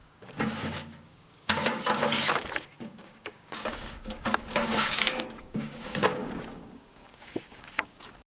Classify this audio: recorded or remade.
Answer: remade